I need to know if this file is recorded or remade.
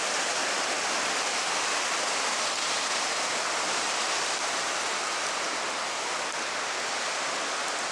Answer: recorded